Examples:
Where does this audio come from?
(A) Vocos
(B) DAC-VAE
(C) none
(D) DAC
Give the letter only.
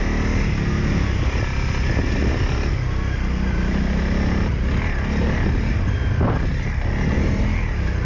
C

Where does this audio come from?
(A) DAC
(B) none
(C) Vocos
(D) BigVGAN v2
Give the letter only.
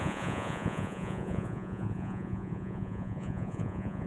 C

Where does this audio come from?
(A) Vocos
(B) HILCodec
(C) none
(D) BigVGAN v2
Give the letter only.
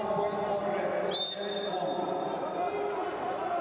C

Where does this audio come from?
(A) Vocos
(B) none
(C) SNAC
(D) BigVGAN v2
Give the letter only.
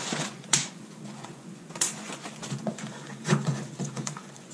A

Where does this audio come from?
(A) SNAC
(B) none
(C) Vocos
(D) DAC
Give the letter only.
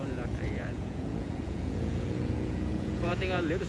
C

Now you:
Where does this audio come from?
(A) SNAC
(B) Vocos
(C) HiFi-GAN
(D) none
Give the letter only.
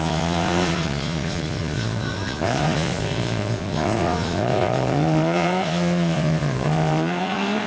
B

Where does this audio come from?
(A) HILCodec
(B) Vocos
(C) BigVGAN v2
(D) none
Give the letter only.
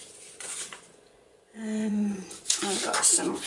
B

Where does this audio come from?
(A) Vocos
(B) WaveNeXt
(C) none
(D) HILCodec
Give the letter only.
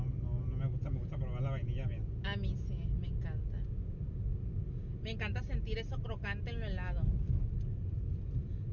C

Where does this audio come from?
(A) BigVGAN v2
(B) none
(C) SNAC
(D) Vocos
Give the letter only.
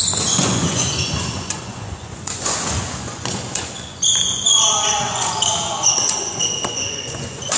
D